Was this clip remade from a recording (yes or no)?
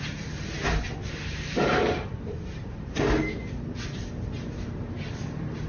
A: yes